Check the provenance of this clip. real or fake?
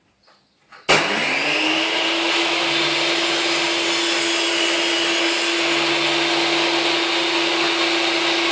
real